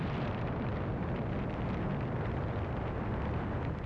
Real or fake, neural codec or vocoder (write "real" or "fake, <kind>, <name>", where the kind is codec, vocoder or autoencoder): fake, vocoder, BigVGAN v2